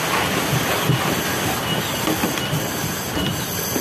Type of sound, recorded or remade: recorded